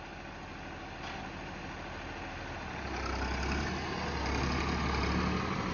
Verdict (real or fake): real